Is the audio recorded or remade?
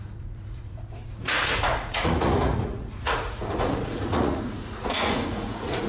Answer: remade